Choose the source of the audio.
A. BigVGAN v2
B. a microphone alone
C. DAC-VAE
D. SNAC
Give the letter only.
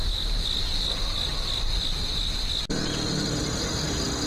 B